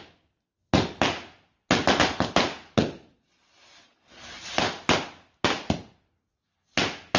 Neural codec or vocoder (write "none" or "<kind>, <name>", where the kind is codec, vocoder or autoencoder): none